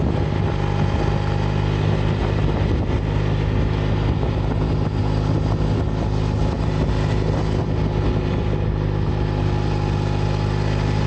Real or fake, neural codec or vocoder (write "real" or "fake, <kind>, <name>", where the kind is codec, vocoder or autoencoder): real